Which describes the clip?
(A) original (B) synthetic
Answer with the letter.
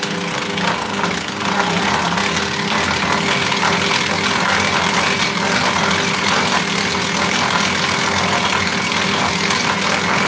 A